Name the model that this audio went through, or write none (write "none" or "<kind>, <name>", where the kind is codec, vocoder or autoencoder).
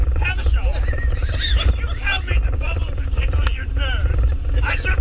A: none